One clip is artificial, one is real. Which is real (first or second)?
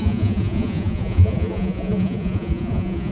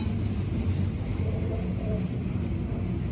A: second